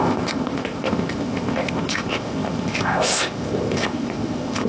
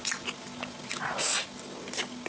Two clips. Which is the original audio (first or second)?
second